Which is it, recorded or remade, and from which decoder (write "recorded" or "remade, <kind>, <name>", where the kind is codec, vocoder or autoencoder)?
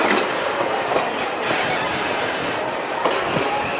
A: remade, vocoder, BigVGAN v2